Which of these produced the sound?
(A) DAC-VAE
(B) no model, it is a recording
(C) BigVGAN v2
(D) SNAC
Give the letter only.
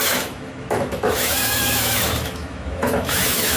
A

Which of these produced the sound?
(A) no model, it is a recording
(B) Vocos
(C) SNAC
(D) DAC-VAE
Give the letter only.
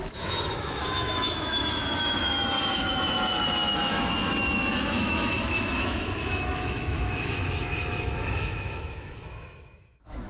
D